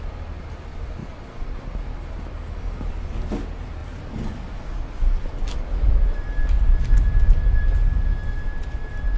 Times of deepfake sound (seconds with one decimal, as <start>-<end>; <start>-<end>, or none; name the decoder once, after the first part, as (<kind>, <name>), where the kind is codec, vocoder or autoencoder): none